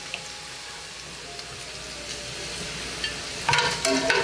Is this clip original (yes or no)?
yes